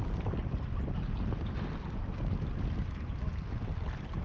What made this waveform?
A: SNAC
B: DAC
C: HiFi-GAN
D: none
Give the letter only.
D